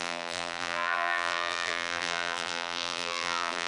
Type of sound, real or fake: fake